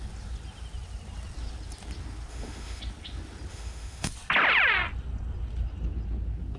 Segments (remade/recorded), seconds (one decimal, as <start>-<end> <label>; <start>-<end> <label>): 0.0-2.3 recorded; 2.3-2.8 remade; 2.8-3.5 recorded; 3.5-4.1 remade; 4.1-6.6 recorded